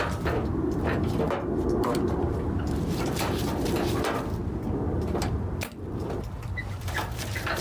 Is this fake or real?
fake